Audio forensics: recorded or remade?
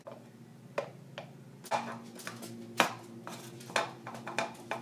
recorded